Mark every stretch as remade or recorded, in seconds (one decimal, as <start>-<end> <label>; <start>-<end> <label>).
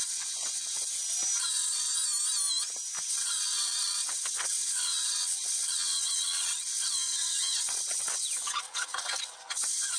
0.0-0.9 remade; 0.9-1.4 recorded; 1.4-1.9 remade; 1.9-3.1 recorded; 3.1-10.0 remade